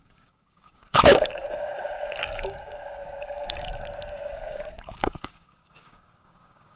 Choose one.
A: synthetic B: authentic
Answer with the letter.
A